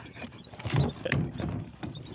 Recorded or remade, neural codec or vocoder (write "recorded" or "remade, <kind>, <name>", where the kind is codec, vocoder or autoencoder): remade, vocoder, BigVGAN v2